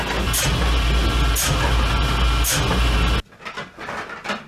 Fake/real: real